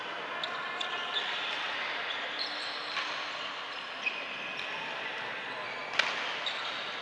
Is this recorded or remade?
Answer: recorded